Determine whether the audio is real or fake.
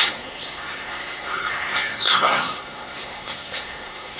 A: fake